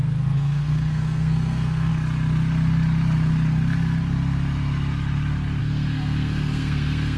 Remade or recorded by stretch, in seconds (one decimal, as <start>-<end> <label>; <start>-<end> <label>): 0.0-1.9 remade; 1.9-5.6 recorded; 5.6-7.2 remade